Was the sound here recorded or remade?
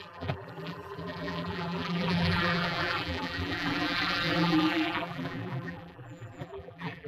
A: remade